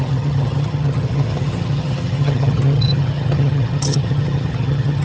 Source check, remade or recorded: remade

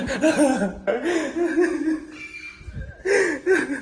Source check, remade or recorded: recorded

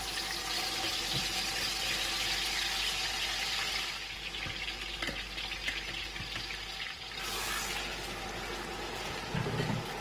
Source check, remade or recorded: recorded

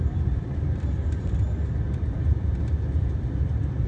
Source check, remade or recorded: remade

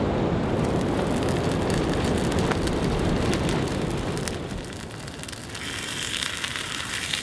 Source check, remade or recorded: recorded